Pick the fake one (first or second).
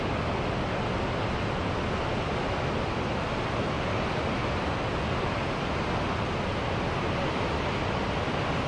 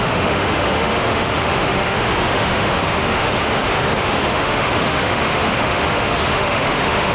second